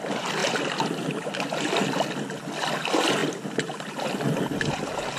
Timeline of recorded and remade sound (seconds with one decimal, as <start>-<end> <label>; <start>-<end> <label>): 0.0-5.2 recorded